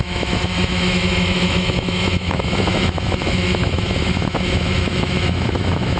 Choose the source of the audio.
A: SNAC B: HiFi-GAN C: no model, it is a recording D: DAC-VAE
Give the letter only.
D